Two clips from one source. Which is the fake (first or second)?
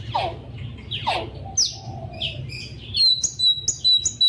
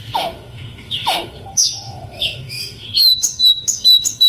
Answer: second